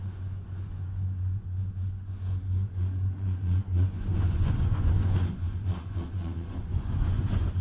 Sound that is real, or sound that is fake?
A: fake